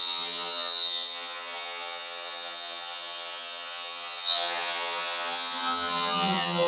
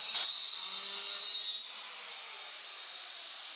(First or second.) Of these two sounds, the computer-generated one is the first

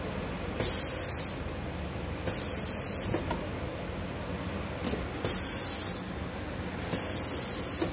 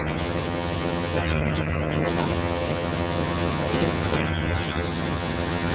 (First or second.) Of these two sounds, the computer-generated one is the second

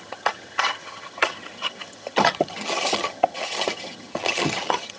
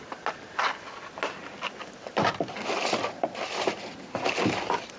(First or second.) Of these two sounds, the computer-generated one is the first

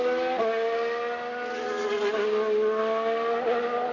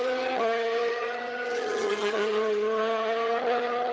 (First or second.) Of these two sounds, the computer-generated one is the second